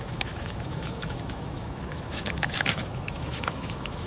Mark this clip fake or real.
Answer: fake